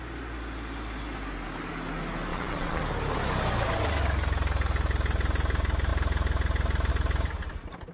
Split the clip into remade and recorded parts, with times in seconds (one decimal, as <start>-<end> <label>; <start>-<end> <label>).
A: 0.0-2.3 recorded; 2.3-2.8 remade; 2.8-7.9 recorded